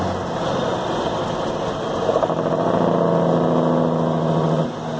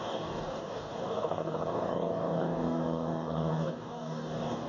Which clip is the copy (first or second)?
second